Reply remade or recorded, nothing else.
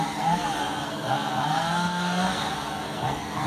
remade